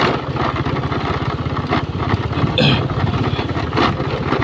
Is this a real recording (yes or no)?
yes